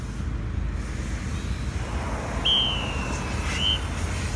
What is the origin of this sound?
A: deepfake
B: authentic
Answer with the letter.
B